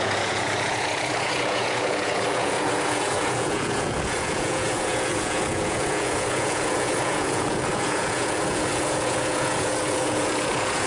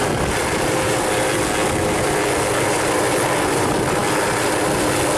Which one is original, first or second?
second